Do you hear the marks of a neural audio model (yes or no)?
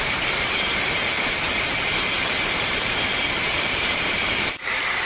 yes